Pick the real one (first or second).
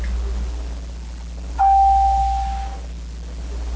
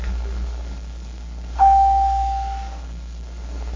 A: first